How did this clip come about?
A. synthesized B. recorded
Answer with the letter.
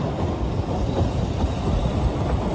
B